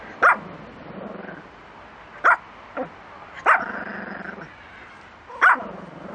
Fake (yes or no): no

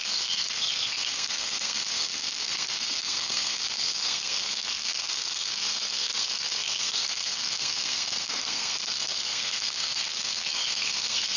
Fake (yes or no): yes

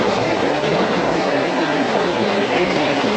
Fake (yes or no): yes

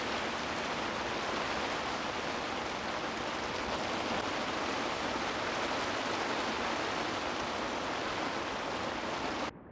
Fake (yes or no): no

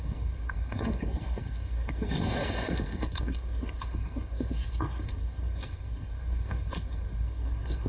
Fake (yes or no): yes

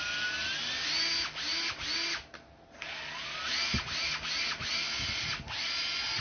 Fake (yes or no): no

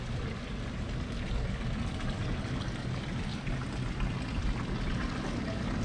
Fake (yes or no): no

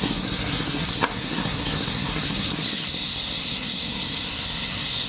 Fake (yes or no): yes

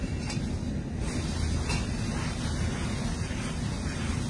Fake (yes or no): no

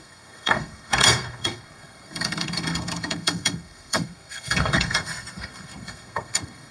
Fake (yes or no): yes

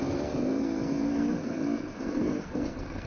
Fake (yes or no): yes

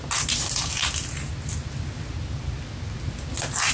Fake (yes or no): no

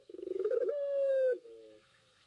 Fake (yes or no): yes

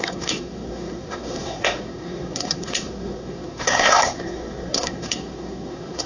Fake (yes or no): yes